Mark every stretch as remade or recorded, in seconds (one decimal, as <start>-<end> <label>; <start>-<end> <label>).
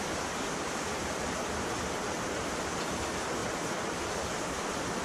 0.0-1.0 recorded; 1.0-2.6 remade; 2.6-5.0 recorded